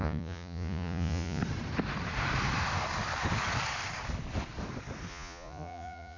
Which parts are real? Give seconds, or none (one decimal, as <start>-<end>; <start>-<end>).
1.4-5.1